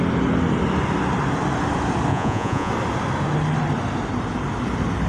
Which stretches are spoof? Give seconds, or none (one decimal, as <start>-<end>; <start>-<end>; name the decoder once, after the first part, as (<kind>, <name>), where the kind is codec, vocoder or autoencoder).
2.1-2.7 (vocoder, Vocos)